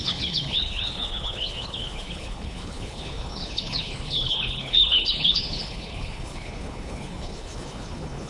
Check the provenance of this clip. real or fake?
fake